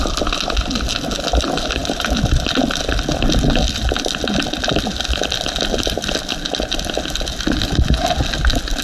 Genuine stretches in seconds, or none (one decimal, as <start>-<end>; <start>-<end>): 0.0-8.8